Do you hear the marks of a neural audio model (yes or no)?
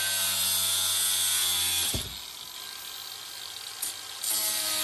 no